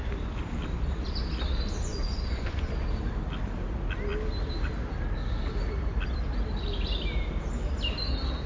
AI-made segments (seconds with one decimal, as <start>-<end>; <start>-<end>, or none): 1.9-2.7

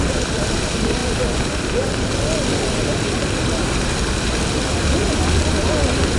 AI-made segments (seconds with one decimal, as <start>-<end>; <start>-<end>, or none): 0.0-6.2

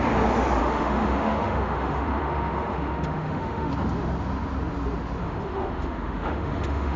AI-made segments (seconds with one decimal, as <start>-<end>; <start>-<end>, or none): 0.6-3.7; 5.2-7.0

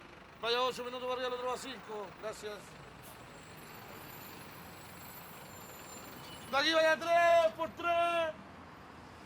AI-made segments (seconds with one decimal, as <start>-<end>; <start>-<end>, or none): none